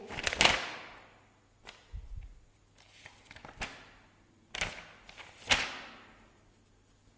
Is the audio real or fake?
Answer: real